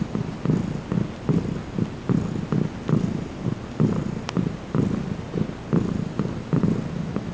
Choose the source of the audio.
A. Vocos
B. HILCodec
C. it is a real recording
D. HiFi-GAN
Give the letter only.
C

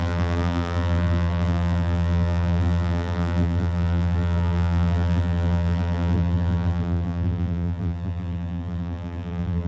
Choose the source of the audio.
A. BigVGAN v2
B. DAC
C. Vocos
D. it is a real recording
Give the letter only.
A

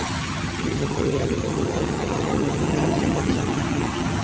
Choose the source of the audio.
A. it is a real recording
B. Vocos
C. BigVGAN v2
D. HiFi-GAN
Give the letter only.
D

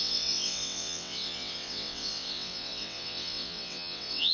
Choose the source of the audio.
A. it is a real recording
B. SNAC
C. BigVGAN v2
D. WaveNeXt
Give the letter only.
D